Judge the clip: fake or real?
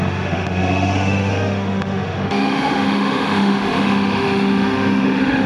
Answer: fake